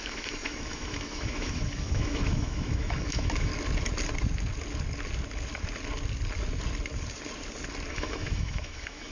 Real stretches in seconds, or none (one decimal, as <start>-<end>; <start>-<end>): 3.5-7.9